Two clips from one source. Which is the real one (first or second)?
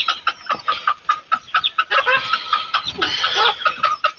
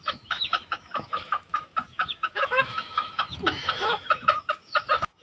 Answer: first